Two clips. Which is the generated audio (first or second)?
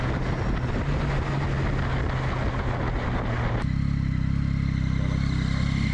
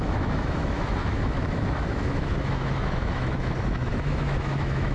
second